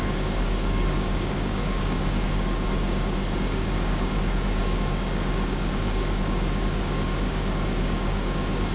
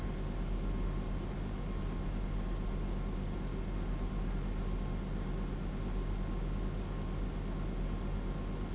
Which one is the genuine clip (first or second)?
second